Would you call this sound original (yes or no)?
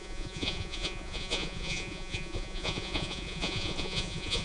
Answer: no